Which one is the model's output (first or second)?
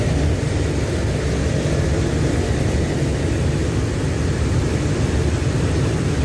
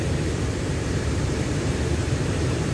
second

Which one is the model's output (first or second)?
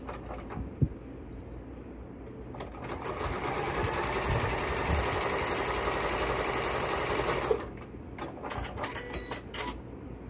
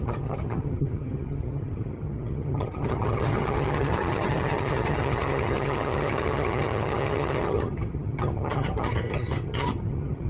second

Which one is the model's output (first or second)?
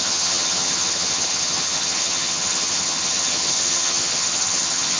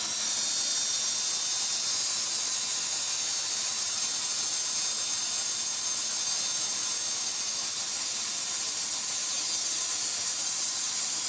first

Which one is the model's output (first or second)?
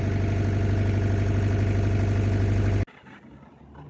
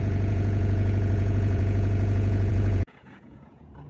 second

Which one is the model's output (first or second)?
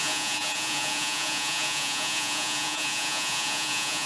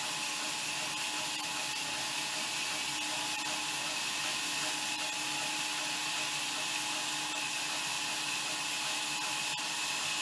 first